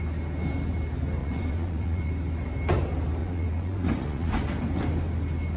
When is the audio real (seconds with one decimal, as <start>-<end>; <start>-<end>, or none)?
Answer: 0.0-1.2; 2.1-3.2; 4.3-5.6